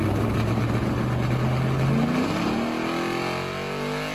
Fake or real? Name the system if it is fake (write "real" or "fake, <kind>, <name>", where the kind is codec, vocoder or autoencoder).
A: real